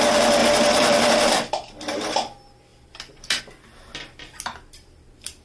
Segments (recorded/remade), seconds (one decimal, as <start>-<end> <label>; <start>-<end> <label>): 0.0-0.4 recorded; 0.4-1.1 remade; 1.1-2.7 recorded; 2.7-3.4 remade; 3.4-5.4 recorded